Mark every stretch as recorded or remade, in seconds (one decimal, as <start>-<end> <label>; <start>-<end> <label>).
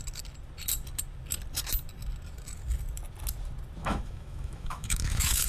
0.0-3.8 recorded; 3.8-5.5 remade